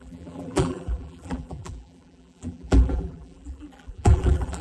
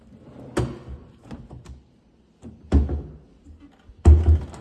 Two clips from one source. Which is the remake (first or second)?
first